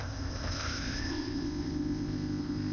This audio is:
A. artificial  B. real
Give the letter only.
A